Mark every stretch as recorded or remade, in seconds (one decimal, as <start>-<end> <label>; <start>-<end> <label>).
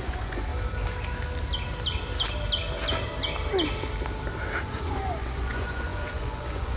0.0-0.5 remade; 0.5-4.6 recorded; 4.6-6.8 remade